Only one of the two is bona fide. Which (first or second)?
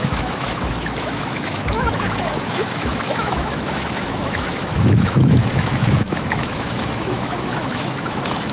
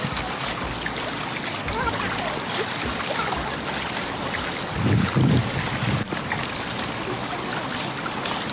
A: second